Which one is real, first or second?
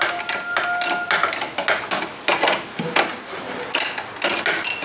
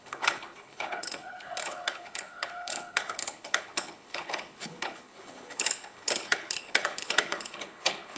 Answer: first